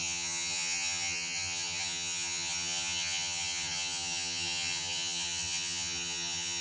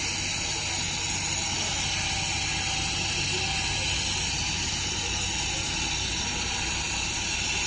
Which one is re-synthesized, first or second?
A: first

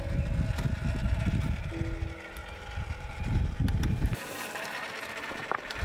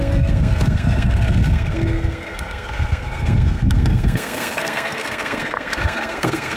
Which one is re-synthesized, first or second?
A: second